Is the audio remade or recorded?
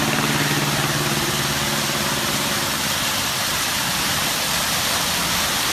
recorded